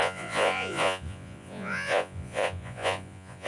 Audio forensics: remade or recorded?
remade